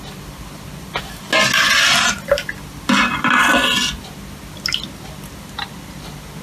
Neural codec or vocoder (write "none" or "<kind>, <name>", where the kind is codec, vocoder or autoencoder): none